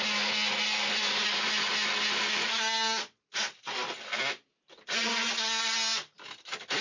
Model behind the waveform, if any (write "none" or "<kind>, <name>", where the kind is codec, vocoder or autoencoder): none